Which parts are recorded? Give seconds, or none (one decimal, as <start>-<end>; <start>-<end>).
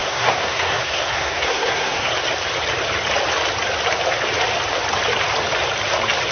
2.1-6.3